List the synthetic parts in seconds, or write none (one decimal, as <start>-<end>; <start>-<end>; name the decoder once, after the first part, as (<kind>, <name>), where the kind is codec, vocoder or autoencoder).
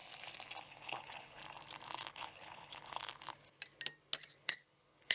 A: 0.6-1.4 (codec, HILCodec); 2.1-3.1; 4.4-5.1